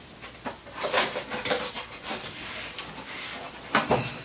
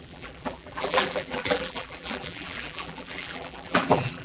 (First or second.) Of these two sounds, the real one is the first